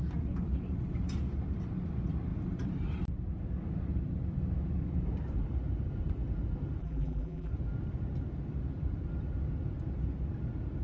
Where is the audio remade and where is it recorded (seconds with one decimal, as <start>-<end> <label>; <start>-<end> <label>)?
0.0-6.8 recorded; 6.8-7.5 remade; 7.5-10.8 recorded